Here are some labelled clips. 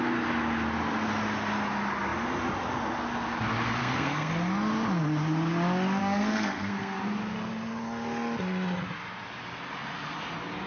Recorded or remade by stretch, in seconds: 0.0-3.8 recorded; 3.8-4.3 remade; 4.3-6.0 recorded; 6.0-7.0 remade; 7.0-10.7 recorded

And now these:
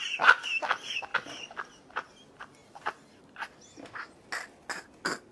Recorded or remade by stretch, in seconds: 0.0-2.6 recorded; 2.6-4.2 remade; 4.2-5.3 recorded

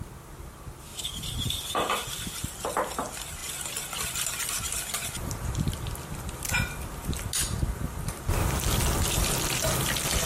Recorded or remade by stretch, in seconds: 0.0-0.9 recorded; 0.9-1.9 remade; 1.9-10.3 recorded

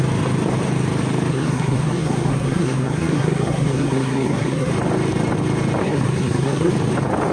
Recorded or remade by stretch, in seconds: 0.0-1.3 recorded; 1.3-4.7 remade; 4.7-5.8 recorded; 5.8-6.7 remade; 6.7-7.3 recorded

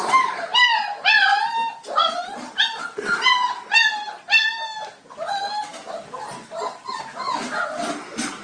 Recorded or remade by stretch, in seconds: 0.0-8.4 recorded

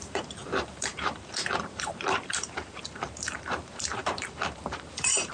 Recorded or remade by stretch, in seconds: 0.0-5.3 remade

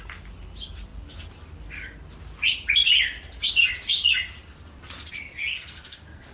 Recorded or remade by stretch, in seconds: 0.0-5.5 recorded; 5.5-6.3 remade